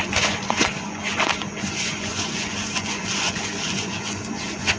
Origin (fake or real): fake